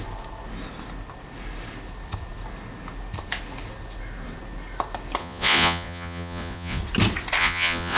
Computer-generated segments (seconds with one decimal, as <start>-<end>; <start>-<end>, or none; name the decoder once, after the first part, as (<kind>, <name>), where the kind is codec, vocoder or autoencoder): 5.2-6.8 (vocoder, Vocos); 7.4-8.0